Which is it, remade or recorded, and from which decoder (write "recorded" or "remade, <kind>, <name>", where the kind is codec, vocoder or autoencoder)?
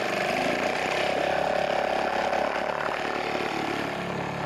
recorded